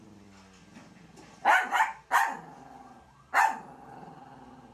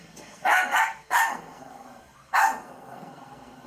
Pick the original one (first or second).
first